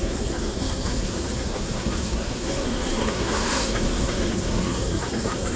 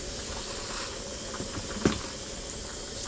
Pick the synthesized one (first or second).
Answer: first